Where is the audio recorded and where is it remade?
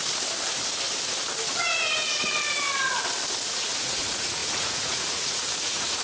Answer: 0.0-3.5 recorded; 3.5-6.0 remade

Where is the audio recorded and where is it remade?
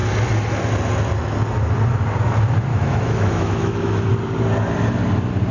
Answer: 0.0-2.7 recorded; 2.7-4.1 remade; 4.1-5.5 recorded